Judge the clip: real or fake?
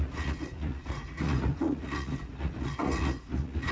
fake